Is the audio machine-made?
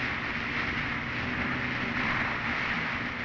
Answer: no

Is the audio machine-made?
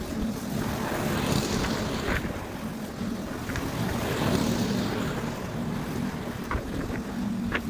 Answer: no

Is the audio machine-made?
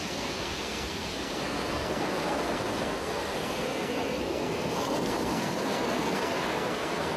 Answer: yes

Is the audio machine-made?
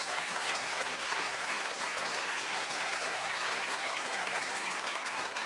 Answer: yes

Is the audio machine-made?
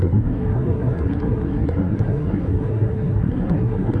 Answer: yes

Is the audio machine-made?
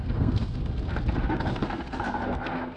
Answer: yes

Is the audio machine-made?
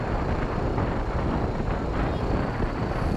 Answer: no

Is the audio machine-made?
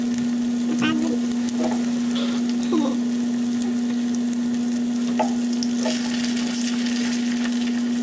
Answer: no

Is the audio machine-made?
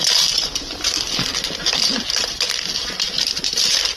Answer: no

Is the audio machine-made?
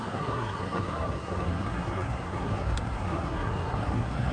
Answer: yes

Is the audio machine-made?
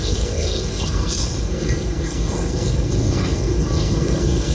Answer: yes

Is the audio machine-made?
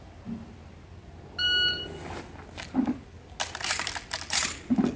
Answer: no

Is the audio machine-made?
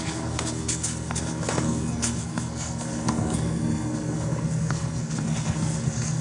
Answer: yes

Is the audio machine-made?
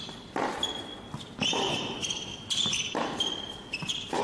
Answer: no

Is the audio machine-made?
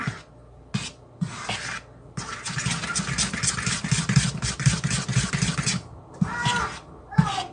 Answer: no